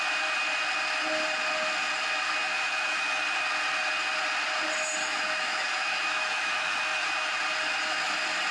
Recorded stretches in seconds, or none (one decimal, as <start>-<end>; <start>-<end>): 0.0-2.4; 3.2-5.0; 7.3-8.5